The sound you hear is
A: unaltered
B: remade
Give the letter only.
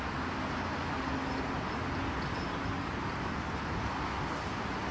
A